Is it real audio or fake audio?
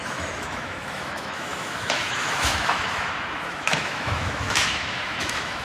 fake